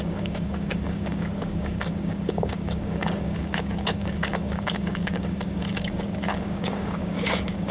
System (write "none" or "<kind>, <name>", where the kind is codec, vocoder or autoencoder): codec, DAC